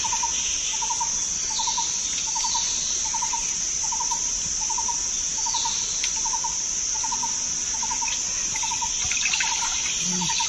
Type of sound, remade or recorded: recorded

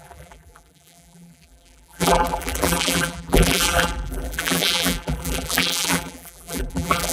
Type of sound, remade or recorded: remade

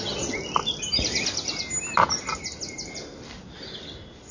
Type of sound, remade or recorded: recorded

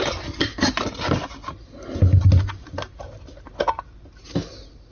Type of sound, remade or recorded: recorded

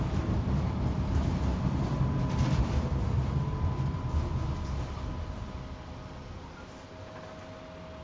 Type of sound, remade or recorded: recorded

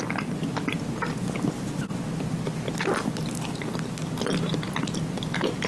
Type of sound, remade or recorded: recorded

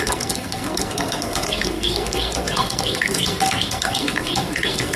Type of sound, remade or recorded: remade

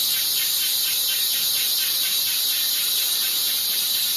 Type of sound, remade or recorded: remade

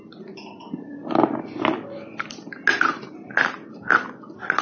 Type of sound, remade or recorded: recorded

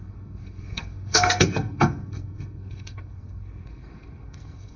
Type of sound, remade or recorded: remade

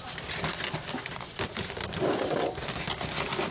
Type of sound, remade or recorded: recorded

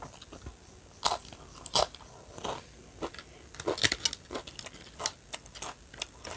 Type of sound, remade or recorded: recorded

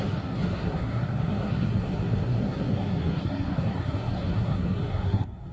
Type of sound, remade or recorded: remade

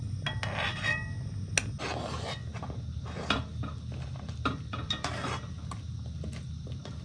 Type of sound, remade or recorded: recorded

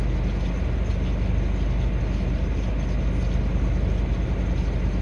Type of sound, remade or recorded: recorded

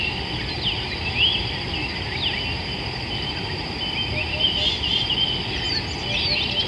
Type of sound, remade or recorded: recorded